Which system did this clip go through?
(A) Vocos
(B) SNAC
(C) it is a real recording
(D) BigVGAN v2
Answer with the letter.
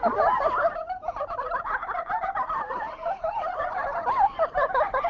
C